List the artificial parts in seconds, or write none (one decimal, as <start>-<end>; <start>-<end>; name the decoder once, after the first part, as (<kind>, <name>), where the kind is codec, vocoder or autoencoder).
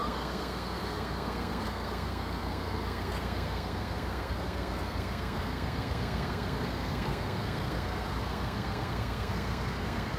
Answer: 0.0-10.2 (codec, SNAC)